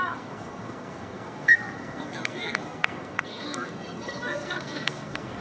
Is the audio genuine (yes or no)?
no